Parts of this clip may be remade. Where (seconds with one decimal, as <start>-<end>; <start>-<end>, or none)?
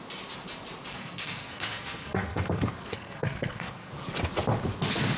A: 0.9-3.9